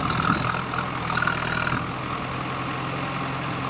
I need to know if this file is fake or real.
real